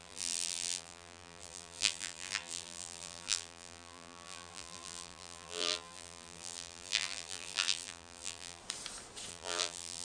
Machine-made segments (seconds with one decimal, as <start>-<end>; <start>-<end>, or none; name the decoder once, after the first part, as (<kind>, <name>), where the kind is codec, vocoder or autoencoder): 0.0-8.6 (vocoder, BigVGAN v2); 9.3-10.0